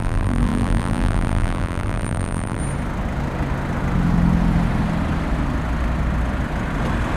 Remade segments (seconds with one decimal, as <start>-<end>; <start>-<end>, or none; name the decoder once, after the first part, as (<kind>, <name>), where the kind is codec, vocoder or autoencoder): 0.0-2.6 (vocoder, BigVGAN v2)